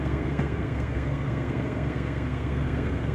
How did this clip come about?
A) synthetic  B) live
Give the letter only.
A